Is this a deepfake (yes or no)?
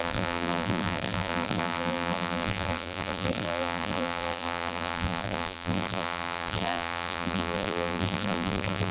yes